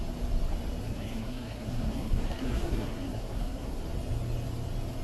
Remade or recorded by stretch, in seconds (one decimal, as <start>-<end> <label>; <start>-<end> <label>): 0.0-0.8 recorded; 0.8-3.8 remade; 3.8-5.0 recorded